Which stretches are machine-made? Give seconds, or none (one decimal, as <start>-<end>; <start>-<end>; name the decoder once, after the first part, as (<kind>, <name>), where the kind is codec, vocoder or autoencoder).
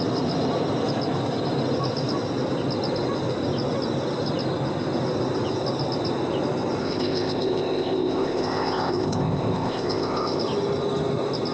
6.8-10.4 (codec, ZipCodec)